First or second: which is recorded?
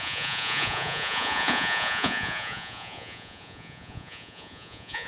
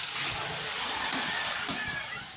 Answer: second